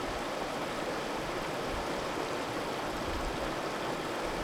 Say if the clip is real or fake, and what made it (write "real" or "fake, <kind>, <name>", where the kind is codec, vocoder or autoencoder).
real